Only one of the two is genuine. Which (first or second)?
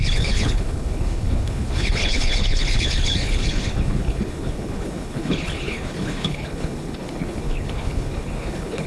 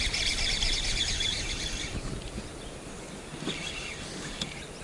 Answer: second